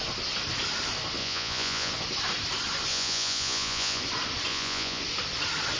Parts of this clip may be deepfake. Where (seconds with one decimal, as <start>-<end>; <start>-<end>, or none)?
1.2-1.9; 2.9-4.0; 4.5-5.0